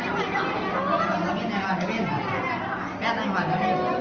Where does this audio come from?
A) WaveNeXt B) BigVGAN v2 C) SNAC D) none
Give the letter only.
D